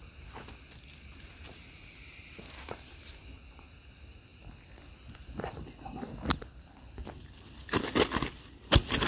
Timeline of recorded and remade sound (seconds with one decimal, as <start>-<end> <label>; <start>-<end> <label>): 0.0-9.1 recorded

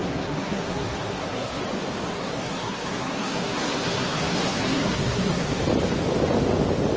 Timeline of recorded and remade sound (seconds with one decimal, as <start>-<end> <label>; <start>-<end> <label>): 0.0-1.6 remade; 1.6-2.1 recorded; 2.1-5.6 remade; 5.6-7.0 recorded

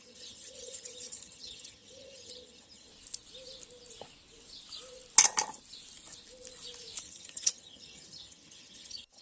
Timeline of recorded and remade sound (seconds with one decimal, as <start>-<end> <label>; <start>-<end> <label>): 0.0-2.9 remade; 2.9-7.0 recorded; 7.0-9.2 remade

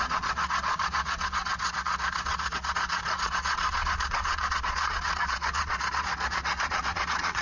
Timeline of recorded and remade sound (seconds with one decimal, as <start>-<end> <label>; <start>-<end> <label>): 0.0-7.4 remade

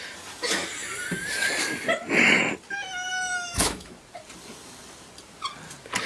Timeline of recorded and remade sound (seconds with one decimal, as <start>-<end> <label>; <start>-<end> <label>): 0.0-3.1 recorded; 3.1-3.9 remade; 3.9-6.1 recorded

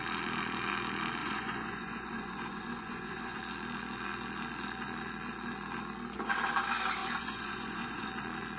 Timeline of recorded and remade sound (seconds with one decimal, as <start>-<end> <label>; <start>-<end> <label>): 0.0-1.2 recorded; 1.2-3.4 remade; 3.4-7.0 recorded; 7.0-8.1 remade; 8.1-8.6 recorded

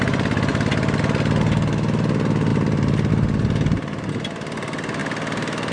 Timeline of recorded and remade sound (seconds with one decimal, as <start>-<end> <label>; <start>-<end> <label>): 0.0-0.5 recorded; 0.5-1.0 remade; 1.0-5.7 recorded

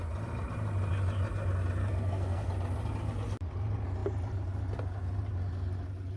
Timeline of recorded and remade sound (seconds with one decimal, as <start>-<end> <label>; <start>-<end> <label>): 0.0-1.8 recorded; 1.8-2.5 remade; 2.5-6.2 recorded